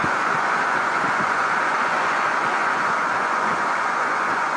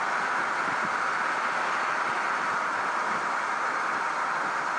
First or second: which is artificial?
first